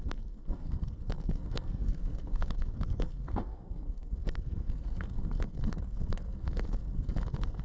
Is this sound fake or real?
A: fake